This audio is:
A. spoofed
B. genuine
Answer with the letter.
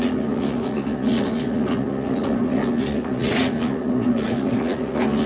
A